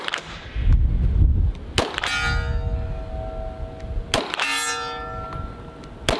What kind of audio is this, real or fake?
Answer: real